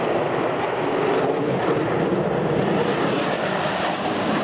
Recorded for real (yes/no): yes